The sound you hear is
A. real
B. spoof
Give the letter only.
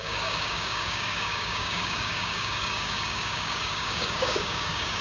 B